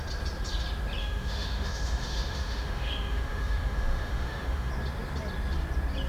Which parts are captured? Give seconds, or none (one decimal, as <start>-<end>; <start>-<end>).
0.0-1.0; 4.7-6.1